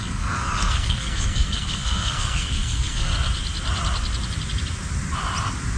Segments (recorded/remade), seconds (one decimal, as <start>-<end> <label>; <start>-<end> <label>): 0.0-3.1 remade; 3.1-5.8 recorded